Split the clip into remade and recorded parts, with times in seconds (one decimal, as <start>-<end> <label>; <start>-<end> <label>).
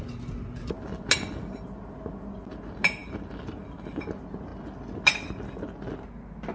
0.0-6.5 recorded